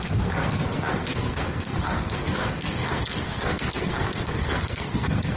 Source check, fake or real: fake